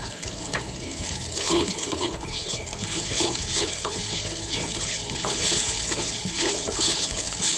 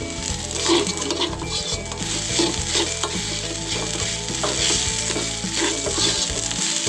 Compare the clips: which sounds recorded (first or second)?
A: second